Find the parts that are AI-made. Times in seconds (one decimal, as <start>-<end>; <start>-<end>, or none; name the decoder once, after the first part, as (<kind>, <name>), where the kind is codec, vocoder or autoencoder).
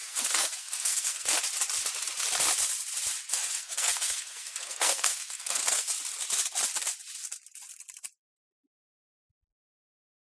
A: 0.0-1.4 (codec, SNAC); 3.3-5.9